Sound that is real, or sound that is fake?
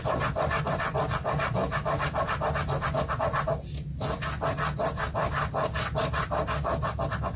real